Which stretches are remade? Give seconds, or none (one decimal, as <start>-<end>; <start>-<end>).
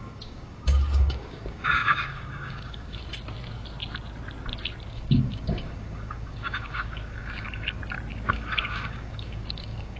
0.0-3.0; 4.9-7.8; 8.3-10.0